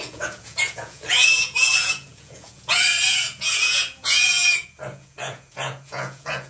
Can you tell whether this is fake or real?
fake